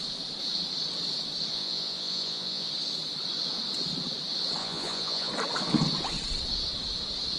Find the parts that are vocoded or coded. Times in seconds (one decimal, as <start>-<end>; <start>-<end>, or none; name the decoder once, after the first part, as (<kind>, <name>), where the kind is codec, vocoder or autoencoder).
1.5-2.7 (vocoder, Vocos); 4.6-5.3